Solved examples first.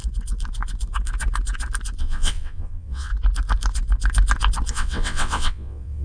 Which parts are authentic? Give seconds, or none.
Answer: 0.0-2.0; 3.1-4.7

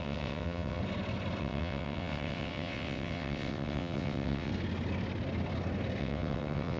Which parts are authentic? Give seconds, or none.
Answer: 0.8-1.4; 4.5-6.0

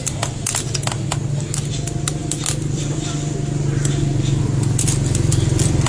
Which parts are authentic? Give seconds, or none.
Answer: 0.0-5.9

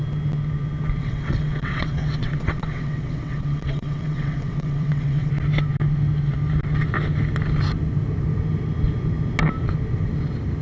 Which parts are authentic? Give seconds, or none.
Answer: 0.0-1.0; 5.3-10.6

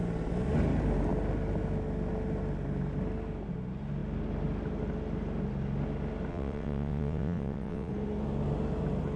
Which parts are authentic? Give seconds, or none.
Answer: 0.0-6.3; 7.9-9.2

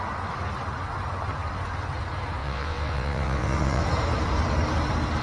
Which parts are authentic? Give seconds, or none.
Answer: 0.0-2.4; 3.8-5.2

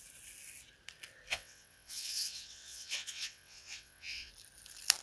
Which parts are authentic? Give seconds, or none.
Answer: 0.0-1.3; 4.3-5.0

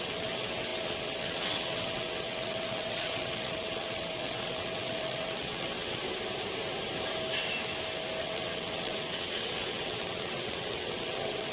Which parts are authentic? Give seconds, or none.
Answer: 6.0-8.2